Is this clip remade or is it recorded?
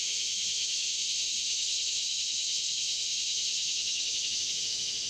remade